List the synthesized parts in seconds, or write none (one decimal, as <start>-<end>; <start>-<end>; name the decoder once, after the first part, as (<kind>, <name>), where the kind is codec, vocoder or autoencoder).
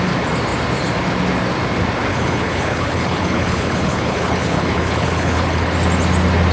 2.1-5.7 (codec, HILCodec)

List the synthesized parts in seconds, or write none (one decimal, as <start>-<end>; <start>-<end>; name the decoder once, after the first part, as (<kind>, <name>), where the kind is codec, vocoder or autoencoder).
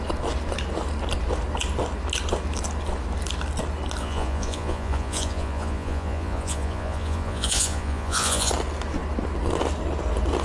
4.0-8.5 (vocoder, Vocos)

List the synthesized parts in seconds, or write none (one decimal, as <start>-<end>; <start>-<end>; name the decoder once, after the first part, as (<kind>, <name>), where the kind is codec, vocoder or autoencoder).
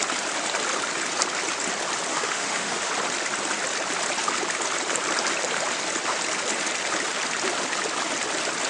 2.1-2.9 (autoencoder, DAC-VAE)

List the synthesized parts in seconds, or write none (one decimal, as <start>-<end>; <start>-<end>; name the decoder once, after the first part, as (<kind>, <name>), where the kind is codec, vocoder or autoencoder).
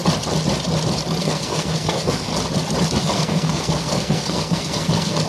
1.2-2.3 (codec, SNAC); 3.0-5.3